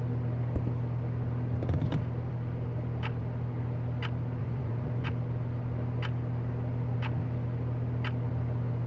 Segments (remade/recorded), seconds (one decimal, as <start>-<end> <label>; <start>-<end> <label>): 0.0-4.4 recorded; 4.4-5.1 remade; 5.1-8.9 recorded